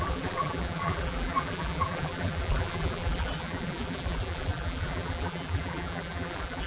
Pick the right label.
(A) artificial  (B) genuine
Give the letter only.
A